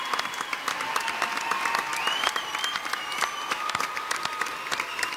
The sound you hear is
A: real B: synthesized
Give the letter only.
A